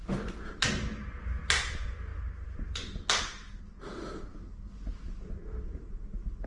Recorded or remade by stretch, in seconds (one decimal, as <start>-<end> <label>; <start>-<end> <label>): 0.0-2.1 remade; 2.1-3.6 recorded; 3.6-6.5 remade